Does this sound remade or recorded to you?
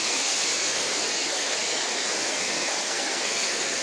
remade